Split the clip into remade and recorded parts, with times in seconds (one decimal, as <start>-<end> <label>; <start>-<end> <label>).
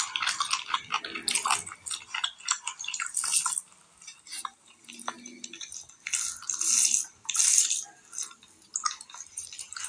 0.0-9.9 recorded